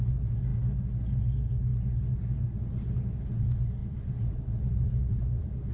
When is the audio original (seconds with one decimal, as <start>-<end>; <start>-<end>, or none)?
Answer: 0.0-3.8